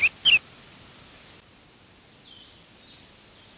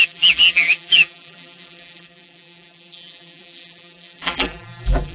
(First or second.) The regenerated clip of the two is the second